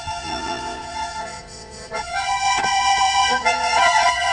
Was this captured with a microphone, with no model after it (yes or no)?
no